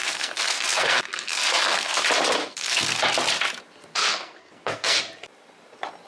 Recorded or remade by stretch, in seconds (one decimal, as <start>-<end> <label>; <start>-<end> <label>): 0.0-2.0 remade; 2.0-2.4 recorded; 2.4-3.0 remade; 3.0-3.9 recorded; 3.9-5.0 remade; 5.0-6.1 recorded